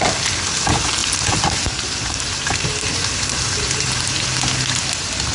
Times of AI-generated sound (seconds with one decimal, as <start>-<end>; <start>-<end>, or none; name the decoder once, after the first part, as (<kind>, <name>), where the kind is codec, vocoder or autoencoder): 1.0-4.2 (vocoder, BigVGAN v2)

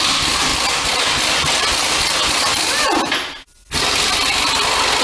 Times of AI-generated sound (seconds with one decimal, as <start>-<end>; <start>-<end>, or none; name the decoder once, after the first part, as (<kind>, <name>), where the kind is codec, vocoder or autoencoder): none

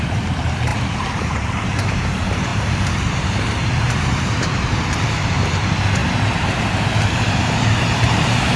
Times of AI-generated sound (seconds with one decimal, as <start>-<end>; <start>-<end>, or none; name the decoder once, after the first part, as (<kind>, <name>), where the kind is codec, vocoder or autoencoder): 0.0-8.6 (vocoder, BigVGAN v2)

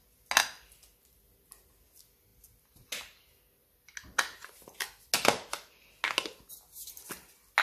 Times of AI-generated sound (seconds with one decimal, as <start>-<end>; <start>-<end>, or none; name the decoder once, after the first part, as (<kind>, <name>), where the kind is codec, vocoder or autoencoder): none

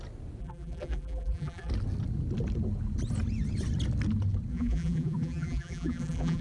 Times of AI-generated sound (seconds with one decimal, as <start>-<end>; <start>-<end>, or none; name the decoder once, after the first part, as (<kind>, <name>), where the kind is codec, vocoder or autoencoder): 0.4-1.7 (vocoder, BigVGAN v2); 4.5-6.4

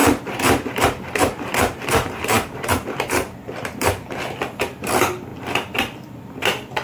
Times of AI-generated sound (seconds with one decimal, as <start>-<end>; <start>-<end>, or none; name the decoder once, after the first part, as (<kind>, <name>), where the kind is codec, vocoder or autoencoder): 0.0-4.1 (vocoder, BigVGAN v2)